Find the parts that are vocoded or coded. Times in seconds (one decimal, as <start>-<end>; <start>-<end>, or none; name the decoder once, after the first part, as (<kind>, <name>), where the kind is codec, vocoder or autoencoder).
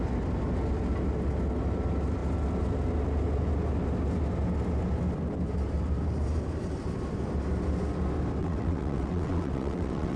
8.4-10.2 (vocoder, WaveNeXt)